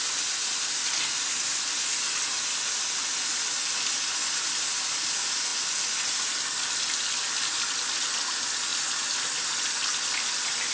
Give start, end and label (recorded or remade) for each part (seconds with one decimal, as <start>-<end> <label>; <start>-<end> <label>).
0.0-10.7 recorded